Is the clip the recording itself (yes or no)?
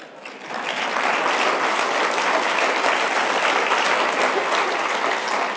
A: yes